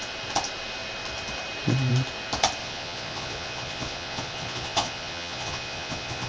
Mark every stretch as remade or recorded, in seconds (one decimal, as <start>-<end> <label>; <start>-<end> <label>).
0.0-2.6 recorded; 2.6-6.3 remade